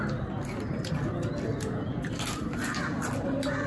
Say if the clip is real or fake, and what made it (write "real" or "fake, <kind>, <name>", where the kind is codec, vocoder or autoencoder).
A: real